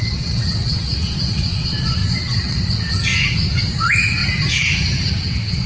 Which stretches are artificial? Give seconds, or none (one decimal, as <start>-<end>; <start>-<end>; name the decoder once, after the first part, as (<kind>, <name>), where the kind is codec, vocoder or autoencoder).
0.0-3.1 (vocoder, WaveNeXt); 3.8-4.2; 5.2-5.7